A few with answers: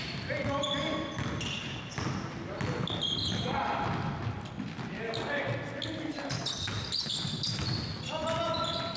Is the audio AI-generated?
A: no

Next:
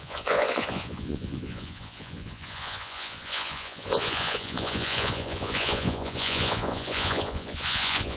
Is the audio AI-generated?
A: yes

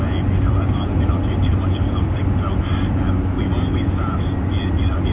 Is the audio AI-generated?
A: no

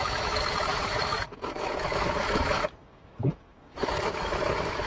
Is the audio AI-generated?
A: yes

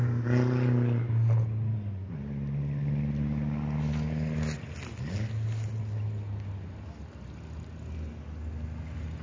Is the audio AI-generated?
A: no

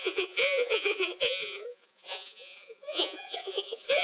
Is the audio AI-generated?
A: yes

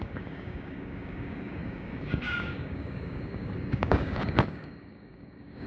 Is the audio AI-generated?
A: yes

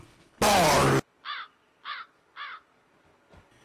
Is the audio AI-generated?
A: no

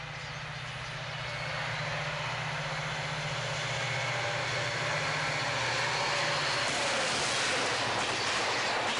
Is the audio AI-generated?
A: no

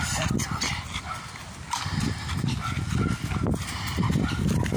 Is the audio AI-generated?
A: no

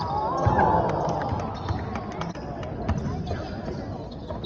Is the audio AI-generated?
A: no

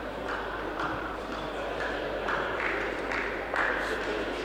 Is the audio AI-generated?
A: yes